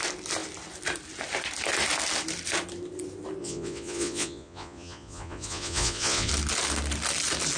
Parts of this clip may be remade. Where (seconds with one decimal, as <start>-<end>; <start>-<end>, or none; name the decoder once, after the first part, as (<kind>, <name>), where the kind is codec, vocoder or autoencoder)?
3.4-6.3 (vocoder, Vocos)